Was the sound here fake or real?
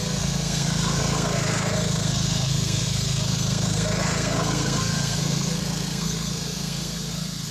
fake